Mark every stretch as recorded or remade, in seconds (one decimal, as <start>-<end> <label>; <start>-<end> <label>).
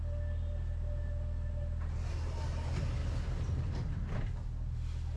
0.0-5.2 recorded